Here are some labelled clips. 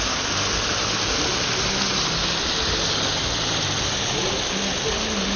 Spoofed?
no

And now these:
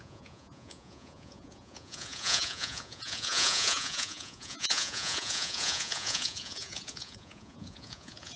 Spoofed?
yes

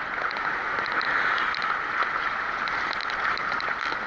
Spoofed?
no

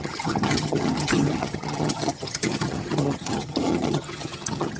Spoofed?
yes